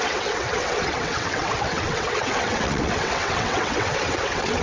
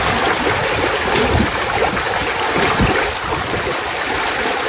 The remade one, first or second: first